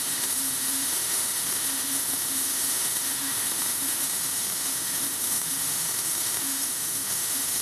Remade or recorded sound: remade